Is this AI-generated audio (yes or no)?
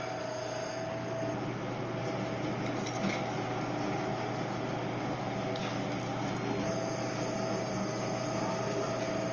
no